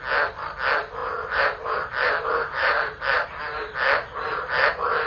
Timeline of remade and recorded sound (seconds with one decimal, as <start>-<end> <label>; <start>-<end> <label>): 0.0-1.0 recorded; 1.0-3.4 remade; 3.4-5.1 recorded